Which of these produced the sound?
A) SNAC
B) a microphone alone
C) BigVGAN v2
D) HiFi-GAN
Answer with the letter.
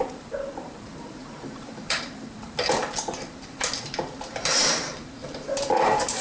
C